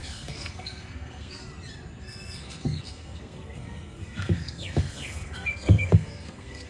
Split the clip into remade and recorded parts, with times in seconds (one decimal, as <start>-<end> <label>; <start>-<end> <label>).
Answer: 0.0-1.4 remade; 1.4-2.0 recorded; 2.0-6.7 remade